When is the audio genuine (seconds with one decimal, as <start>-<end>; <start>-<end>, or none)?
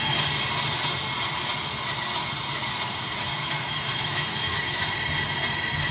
0.0-3.4; 4.9-5.9